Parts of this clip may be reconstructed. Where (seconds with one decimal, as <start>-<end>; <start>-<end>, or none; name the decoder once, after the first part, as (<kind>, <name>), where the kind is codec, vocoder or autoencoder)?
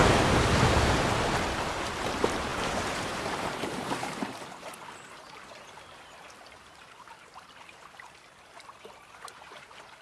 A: 2.0-10.0 (vocoder, BigVGAN v2)